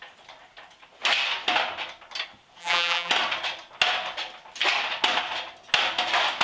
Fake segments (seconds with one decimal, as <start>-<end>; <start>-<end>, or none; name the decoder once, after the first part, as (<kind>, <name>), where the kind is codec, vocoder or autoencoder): 2.6-3.1 (vocoder, BigVGAN v2)